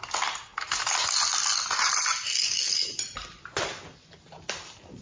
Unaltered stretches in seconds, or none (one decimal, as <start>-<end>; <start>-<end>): 0.0-5.0